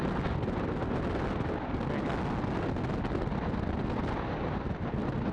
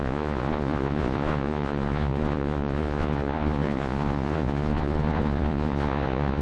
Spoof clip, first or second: second